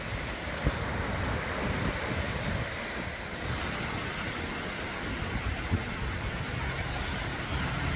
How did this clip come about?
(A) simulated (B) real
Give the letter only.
B